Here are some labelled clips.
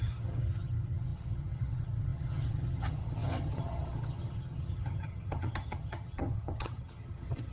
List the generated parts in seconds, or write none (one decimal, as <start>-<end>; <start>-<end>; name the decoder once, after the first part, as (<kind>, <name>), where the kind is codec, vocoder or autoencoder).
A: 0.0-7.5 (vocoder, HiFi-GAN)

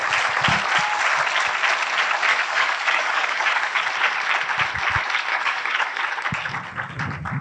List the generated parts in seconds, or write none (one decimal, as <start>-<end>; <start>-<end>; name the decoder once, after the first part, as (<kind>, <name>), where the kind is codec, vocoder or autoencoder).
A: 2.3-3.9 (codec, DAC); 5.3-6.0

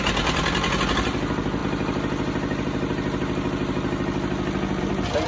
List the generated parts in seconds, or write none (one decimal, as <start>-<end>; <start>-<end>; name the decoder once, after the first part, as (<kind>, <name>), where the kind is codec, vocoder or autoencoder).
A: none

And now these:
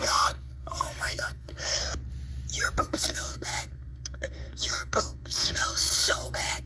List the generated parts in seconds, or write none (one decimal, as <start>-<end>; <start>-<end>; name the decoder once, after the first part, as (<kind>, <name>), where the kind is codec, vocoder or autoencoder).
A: 0.0-1.8 (codec, SNAC); 2.8-6.7

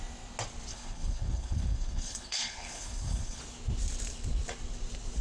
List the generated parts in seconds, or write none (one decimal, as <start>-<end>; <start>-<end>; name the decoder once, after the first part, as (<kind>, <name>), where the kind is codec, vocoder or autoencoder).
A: 0.7-3.4 (codec, HILCodec)

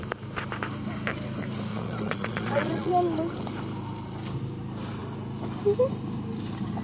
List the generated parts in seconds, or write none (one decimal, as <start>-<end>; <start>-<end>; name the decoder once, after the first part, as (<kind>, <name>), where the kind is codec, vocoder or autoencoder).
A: 1.7-2.9 (vocoder, Vocos)